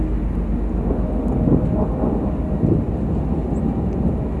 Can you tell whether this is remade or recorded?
recorded